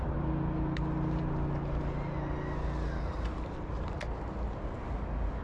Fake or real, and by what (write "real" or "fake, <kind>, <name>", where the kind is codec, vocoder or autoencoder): real